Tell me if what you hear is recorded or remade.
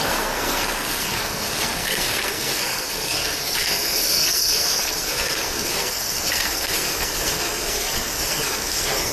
remade